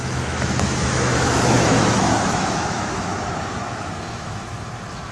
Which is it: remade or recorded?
remade